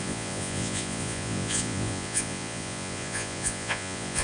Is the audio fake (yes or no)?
yes